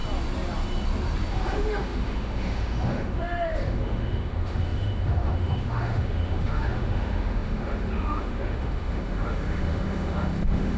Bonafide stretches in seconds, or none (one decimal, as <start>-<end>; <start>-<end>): 0.0-1.3